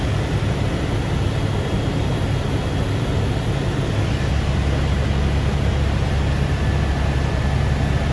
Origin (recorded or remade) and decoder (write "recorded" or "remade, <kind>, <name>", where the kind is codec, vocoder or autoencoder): recorded